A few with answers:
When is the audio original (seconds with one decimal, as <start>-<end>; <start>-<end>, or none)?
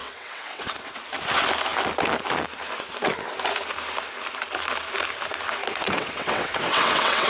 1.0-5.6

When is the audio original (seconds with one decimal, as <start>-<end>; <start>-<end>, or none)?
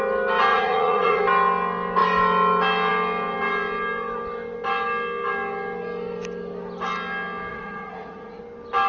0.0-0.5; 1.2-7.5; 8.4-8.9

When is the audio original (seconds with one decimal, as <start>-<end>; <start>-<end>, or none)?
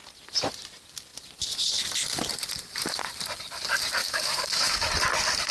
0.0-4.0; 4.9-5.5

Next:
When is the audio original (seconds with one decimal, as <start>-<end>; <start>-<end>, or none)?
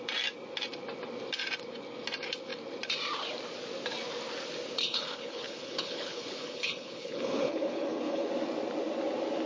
0.0-4.8; 8.3-9.5